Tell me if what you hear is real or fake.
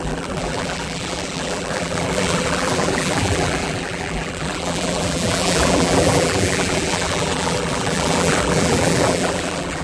fake